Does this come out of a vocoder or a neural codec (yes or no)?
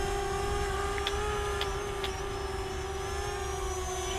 no